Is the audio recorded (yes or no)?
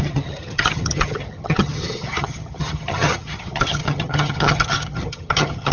no